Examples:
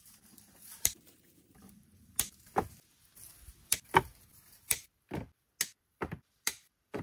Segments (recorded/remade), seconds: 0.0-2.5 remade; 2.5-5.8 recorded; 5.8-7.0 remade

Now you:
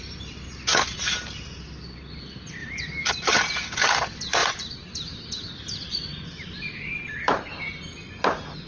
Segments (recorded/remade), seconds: 0.0-2.6 recorded; 2.6-3.1 remade; 3.1-4.4 recorded; 4.4-7.6 remade; 7.6-8.7 recorded

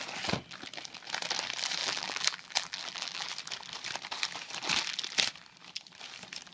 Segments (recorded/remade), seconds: 0.0-1.8 recorded; 1.8-3.3 remade; 3.3-6.5 recorded

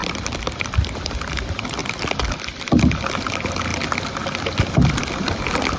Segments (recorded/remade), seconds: 0.0-5.8 remade

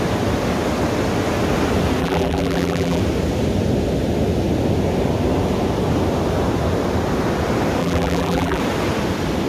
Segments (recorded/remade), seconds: 0.0-2.0 recorded; 2.0-3.0 remade; 3.0-7.8 recorded; 7.8-8.6 remade; 8.6-9.5 recorded

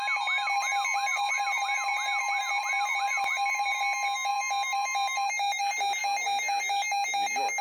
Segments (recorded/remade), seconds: 0.0-1.1 recorded; 1.1-3.8 remade; 3.8-4.3 recorded; 4.3-5.6 remade; 5.6-7.6 recorded

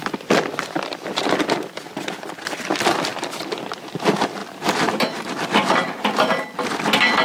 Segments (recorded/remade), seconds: 0.0-4.4 recorded; 4.4-6.3 remade; 6.3-7.2 recorded